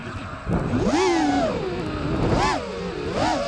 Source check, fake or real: real